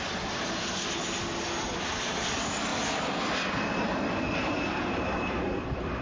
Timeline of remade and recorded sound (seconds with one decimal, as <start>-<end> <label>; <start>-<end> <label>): 0.0-2.7 recorded; 2.7-6.0 remade